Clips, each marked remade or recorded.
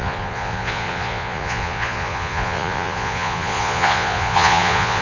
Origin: remade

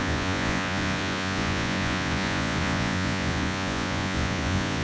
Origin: remade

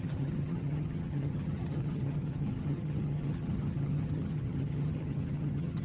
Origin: remade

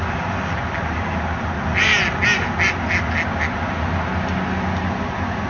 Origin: recorded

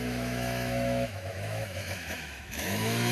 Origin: remade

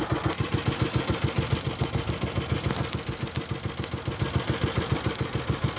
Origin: recorded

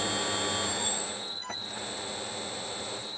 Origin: recorded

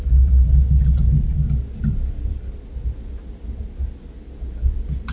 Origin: recorded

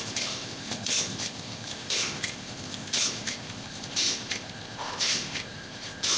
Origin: remade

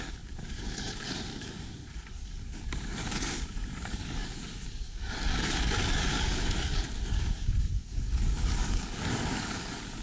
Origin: remade